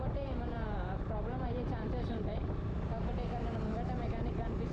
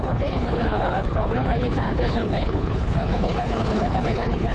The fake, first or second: second